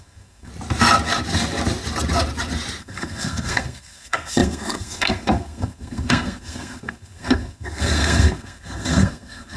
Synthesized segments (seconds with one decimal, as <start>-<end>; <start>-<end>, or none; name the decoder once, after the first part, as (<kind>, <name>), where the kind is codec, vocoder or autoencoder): 0.0-0.5 (codec, SNAC); 2.8-9.6